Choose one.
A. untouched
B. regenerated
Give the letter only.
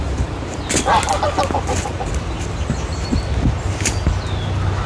A